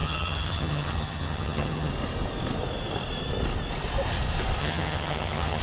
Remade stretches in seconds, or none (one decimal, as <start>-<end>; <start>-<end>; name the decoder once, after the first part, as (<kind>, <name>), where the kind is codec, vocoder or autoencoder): 0.0-1.9 (vocoder, HiFi-GAN); 4.6-5.6